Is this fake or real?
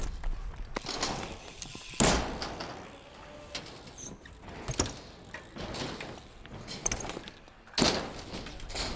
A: real